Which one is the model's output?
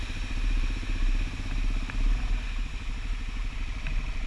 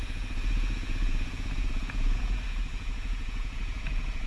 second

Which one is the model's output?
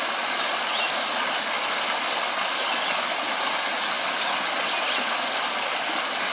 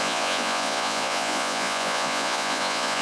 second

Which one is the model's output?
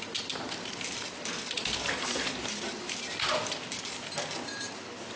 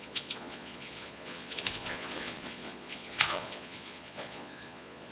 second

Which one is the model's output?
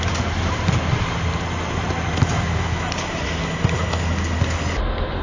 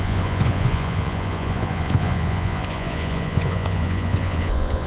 second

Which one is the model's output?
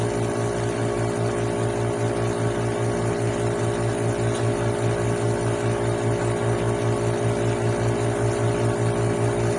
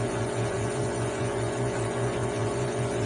second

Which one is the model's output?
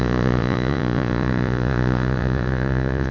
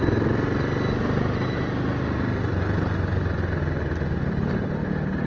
first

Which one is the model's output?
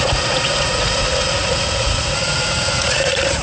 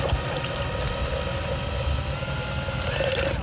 first